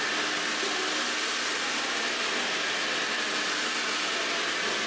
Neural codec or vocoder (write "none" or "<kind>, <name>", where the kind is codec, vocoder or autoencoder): none